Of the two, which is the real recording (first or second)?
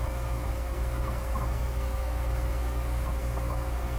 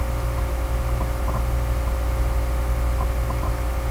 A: second